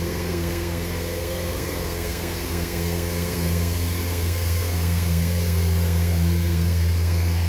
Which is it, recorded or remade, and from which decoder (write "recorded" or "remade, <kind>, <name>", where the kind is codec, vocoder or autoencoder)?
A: remade, codec, SNAC